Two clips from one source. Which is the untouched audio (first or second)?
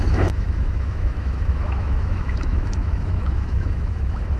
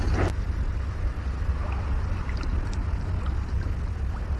second